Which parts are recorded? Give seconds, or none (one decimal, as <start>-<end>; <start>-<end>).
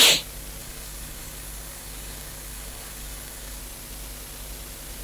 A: 0.0-0.6; 3.6-5.0